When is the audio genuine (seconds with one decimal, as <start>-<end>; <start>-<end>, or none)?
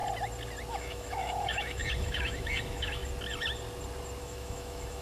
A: 0.0-0.7; 3.0-4.2